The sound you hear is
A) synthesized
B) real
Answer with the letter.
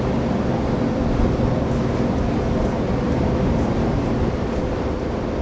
B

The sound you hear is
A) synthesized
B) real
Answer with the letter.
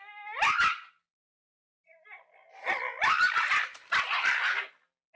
B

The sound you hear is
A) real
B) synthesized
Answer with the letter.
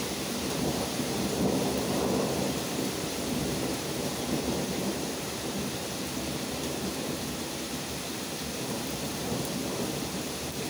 B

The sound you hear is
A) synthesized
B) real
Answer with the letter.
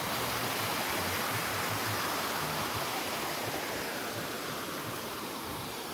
A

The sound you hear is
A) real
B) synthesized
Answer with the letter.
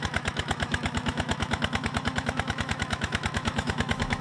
B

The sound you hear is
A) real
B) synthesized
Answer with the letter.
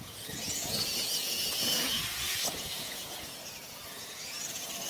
B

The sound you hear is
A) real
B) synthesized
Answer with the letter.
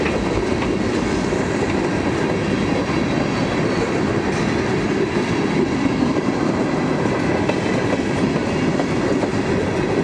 A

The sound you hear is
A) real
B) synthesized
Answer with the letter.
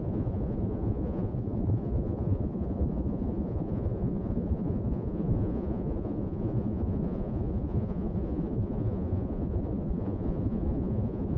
B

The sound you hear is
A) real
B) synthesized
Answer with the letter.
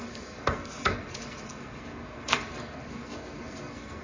B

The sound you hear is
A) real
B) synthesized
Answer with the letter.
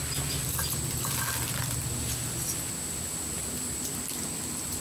A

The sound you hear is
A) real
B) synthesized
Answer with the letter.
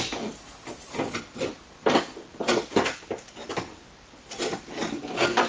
A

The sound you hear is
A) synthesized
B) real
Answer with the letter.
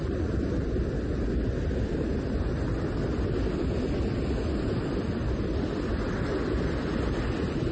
B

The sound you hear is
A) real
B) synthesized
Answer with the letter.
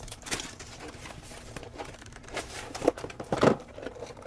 B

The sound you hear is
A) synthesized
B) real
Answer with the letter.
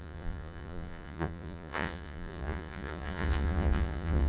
A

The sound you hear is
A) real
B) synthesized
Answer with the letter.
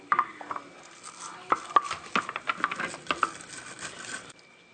A